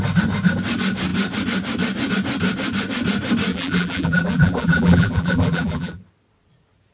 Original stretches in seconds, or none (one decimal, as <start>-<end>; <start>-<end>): 0.0-3.5; 6.0-6.9